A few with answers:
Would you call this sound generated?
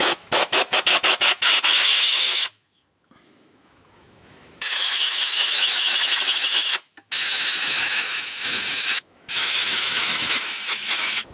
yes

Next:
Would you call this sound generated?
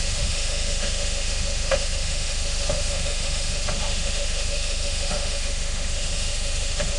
yes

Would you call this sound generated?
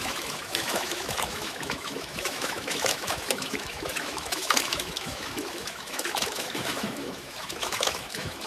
yes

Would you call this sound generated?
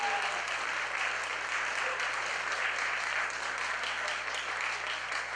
no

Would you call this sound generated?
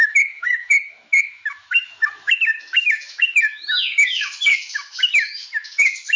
yes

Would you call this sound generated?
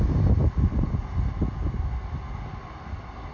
no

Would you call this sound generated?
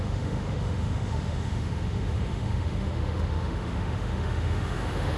yes